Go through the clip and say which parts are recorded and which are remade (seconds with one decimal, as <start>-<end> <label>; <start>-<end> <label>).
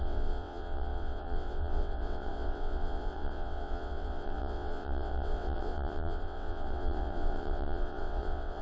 0.0-8.6 remade